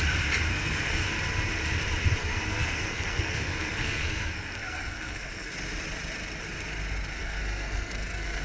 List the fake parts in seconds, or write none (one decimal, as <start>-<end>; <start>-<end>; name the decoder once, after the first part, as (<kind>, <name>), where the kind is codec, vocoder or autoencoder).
0.5-1.0 (codec, SNAC); 2.2-5.5; 7.2-8.4